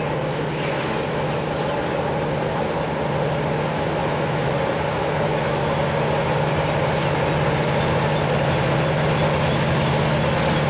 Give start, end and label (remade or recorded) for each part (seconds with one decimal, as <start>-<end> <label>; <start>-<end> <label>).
0.0-4.0 recorded; 4.0-4.5 remade; 4.5-5.0 recorded; 5.0-5.6 remade; 5.6-10.7 recorded